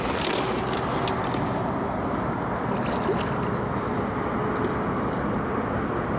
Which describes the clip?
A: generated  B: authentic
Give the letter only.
B